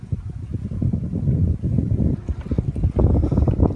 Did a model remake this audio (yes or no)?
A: no